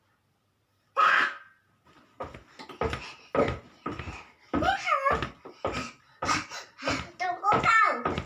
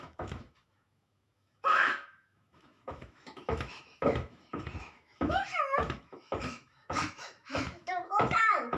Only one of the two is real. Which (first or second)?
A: first